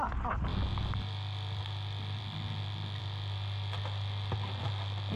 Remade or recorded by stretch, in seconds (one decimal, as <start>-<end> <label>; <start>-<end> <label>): 0.0-5.2 recorded